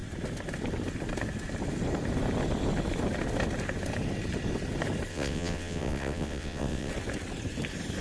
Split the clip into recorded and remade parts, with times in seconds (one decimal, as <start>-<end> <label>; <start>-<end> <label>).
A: 0.0-5.1 recorded; 5.1-6.9 remade; 6.9-8.0 recorded